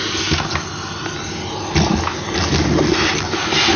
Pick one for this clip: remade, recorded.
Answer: recorded